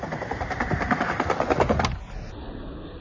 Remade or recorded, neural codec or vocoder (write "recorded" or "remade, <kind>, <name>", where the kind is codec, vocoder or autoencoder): recorded